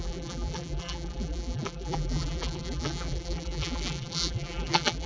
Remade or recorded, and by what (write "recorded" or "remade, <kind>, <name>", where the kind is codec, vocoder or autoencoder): remade, vocoder, BigVGAN v2